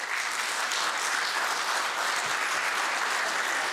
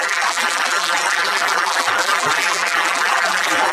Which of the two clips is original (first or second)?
first